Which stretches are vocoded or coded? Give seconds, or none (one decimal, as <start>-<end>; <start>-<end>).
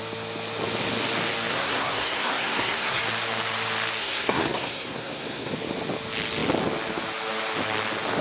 1.5-3.0; 4.0-5.5